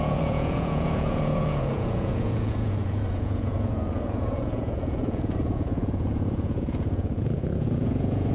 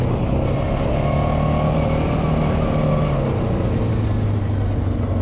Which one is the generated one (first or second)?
first